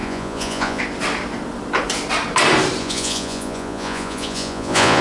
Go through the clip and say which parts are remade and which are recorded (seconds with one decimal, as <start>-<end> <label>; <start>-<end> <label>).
0.0-0.8 remade; 0.8-2.8 recorded; 2.8-5.0 remade